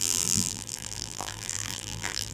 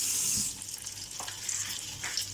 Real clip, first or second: second